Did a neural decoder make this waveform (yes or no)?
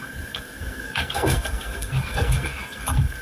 yes